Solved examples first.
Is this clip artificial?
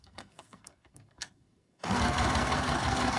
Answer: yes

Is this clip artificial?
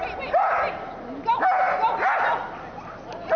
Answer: no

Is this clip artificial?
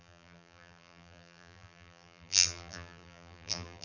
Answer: yes